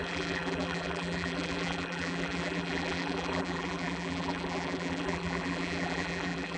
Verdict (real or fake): fake